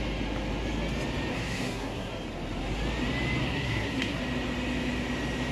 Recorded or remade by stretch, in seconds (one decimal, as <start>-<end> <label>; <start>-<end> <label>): 0.0-1.3 recorded; 1.3-2.1 remade; 2.1-3.4 recorded; 3.4-4.2 remade; 4.2-5.5 recorded